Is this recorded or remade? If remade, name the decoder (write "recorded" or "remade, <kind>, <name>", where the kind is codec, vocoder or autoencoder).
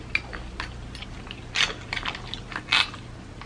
recorded